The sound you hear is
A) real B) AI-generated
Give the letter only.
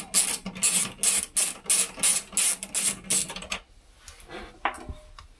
A